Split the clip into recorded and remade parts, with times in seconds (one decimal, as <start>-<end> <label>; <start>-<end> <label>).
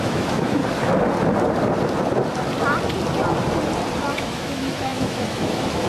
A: 0.0-0.6 remade; 0.6-4.1 recorded; 4.1-5.9 remade